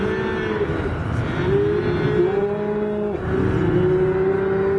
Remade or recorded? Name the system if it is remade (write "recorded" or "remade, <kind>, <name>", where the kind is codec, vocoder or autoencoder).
recorded